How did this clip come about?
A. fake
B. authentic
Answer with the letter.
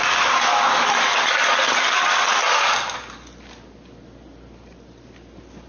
B